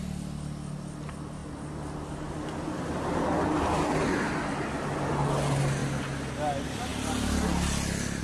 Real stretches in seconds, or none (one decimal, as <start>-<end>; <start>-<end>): 0.0-8.2